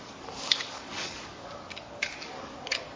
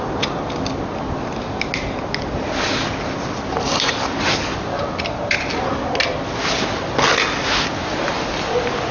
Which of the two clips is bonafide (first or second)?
second